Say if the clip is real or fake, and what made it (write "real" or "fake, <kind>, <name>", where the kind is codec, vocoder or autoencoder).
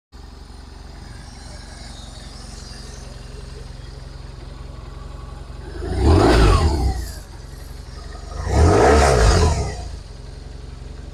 real